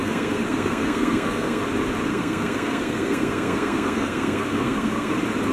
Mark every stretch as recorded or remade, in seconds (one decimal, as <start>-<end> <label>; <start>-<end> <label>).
0.0-1.6 remade; 1.6-2.1 recorded; 2.1-5.1 remade; 5.1-5.5 recorded